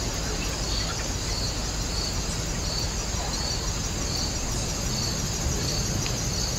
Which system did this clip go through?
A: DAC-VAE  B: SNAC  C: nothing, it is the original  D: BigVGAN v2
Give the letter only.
C